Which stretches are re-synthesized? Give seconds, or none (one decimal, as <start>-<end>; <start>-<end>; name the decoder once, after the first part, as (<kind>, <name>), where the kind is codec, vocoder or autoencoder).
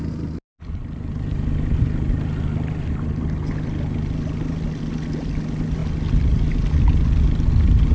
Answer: none